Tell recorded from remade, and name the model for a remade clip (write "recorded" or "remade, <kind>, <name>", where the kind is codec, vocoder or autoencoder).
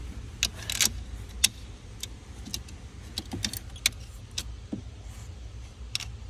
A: recorded